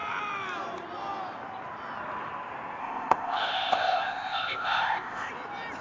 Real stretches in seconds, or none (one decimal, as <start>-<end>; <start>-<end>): 0.0-2.8; 5.3-5.8